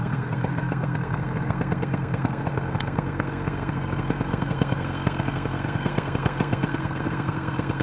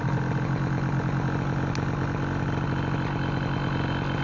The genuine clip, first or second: second